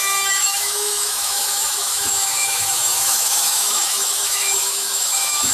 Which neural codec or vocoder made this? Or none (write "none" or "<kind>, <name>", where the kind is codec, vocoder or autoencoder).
autoencoder, DAC-VAE